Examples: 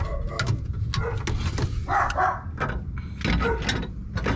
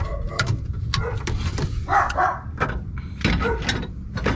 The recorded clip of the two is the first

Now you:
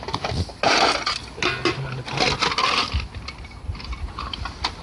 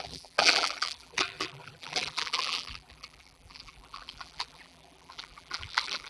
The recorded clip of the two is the first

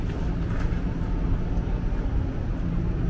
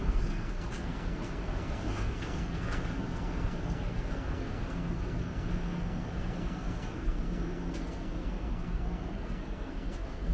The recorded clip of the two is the first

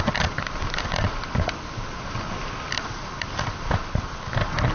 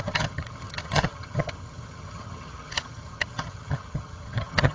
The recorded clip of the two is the first